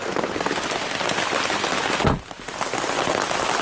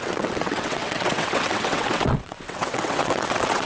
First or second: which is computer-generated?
second